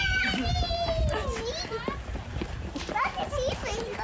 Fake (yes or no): no